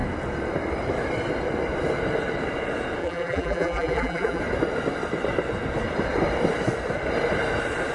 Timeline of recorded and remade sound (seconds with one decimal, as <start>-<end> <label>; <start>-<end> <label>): 0.0-3.0 recorded; 3.0-4.4 remade; 4.4-7.9 recorded